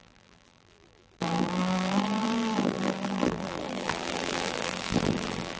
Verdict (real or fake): fake